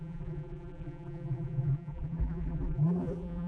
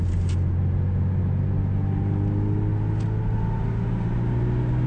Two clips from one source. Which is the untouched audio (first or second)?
second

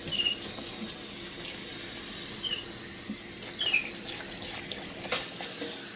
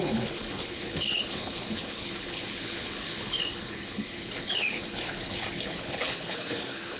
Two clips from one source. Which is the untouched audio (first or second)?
first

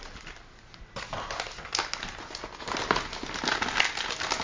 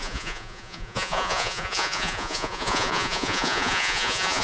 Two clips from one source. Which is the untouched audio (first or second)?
first